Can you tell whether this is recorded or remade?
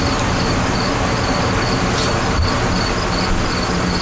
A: recorded